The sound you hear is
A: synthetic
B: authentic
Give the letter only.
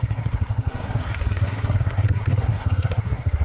A